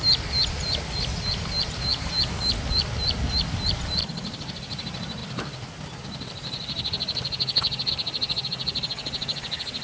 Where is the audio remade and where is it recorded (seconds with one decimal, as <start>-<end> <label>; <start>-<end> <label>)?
0.0-9.8 recorded